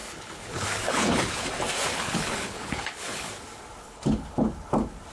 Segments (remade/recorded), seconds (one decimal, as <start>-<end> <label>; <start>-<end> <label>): 0.0-1.5 remade; 1.5-1.9 recorded; 1.9-3.3 remade; 3.3-3.8 recorded; 3.8-4.5 remade; 4.5-5.1 recorded